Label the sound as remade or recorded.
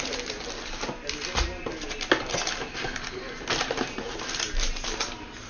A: recorded